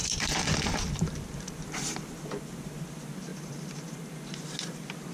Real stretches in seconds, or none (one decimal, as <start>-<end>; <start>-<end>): 1.7-3.3; 3.9-5.1